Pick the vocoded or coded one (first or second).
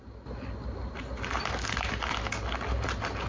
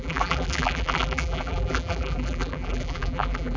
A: second